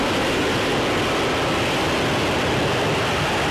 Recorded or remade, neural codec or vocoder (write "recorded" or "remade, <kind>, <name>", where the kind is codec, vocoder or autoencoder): recorded